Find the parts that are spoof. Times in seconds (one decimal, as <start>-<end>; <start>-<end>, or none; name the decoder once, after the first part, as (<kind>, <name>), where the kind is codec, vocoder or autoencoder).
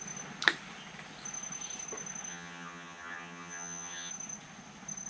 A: 2.3-4.1 (vocoder, HiFi-GAN)